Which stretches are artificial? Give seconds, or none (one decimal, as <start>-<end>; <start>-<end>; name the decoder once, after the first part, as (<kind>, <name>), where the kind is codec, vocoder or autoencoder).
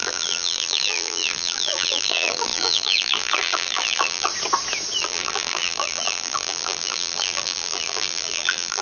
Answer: 0.0-4.3 (vocoder, BigVGAN v2); 5.0-8.8